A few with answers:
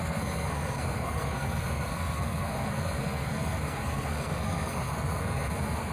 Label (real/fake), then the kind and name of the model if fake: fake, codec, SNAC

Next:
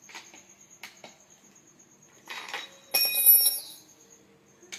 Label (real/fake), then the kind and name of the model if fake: real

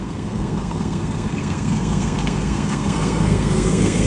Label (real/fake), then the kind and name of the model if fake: fake, codec, SNAC